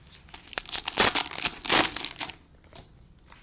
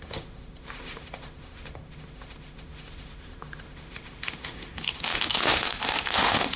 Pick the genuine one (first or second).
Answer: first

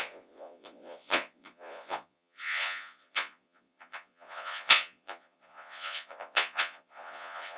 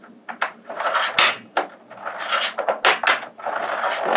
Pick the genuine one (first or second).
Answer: second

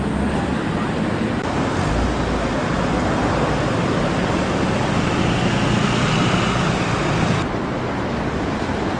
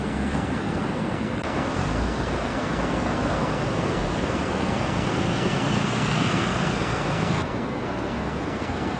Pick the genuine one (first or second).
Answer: first